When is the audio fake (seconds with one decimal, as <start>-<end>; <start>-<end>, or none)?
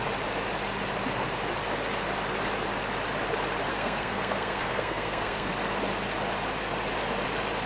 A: 3.7-5.5